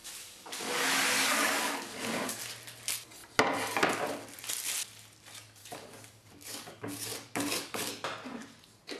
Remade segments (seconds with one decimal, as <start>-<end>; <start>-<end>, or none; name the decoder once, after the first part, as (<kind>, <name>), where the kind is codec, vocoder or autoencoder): 0.0-2.4 (codec, DAC); 5.6-7.9

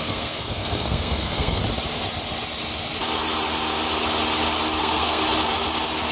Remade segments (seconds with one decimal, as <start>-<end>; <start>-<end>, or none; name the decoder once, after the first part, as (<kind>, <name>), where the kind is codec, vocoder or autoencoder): 0.0-1.6 (codec, SNAC); 4.8-5.2

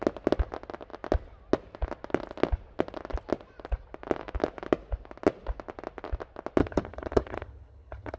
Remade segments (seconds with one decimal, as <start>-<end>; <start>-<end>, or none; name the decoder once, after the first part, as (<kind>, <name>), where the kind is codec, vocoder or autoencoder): 6.6-8.2 (vocoder, HiFi-GAN)

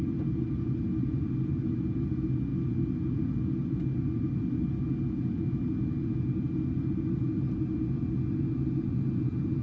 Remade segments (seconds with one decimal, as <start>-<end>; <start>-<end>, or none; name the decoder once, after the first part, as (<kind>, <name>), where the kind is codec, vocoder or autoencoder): none

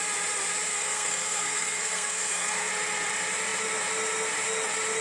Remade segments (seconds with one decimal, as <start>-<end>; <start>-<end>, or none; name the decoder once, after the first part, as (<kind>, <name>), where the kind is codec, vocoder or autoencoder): 0.7-2.7 (codec, SNAC)

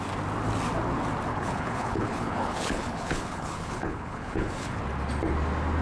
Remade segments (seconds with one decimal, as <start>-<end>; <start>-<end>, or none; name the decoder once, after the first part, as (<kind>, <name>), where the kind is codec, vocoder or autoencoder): 1.3-4.8 (codec, HILCodec)

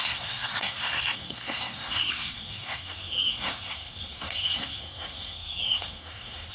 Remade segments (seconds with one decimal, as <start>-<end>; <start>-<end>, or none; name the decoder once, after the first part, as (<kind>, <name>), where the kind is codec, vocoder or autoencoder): 0.0-6.5 (codec, SNAC)